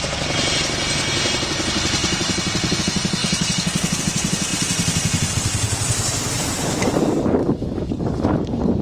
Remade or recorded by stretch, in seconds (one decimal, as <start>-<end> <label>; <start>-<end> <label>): 0.0-3.2 recorded; 3.2-4.0 remade; 4.0-7.4 recorded; 7.4-8.8 remade